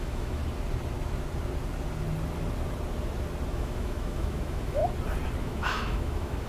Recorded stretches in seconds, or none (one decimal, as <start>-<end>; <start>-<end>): 0.4-3.5; 4.8-5.4